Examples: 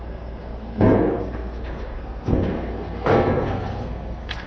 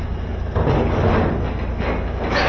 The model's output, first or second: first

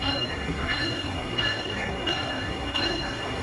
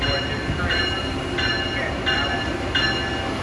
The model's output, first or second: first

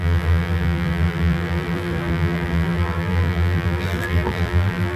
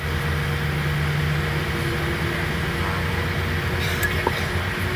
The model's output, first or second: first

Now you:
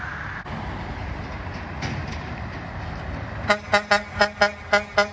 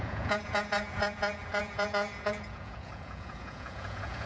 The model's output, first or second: second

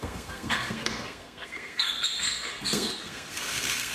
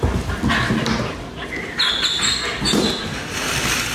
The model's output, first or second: first